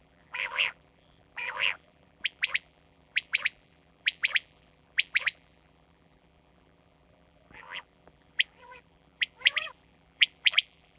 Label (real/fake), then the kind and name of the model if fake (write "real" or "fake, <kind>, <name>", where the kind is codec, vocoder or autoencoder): fake, vocoder, BigVGAN v2